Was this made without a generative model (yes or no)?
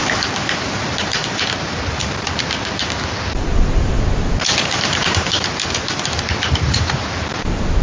no